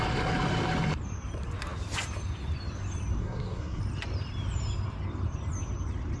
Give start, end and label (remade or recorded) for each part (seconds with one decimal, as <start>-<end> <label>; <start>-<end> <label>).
0.0-3.2 recorded; 3.2-3.8 remade; 3.8-6.2 recorded